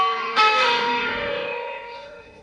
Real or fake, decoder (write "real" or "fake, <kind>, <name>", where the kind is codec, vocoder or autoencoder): fake, autoencoder, DAC-VAE